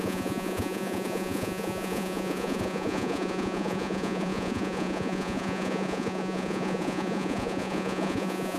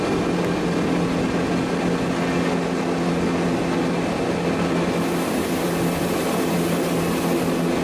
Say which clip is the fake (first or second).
first